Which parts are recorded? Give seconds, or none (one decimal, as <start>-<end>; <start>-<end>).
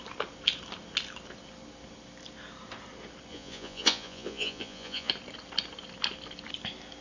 0.0-3.3; 5.1-7.0